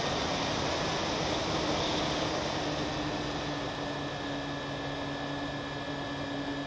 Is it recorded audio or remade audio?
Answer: recorded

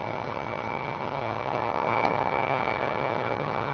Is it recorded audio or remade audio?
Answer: remade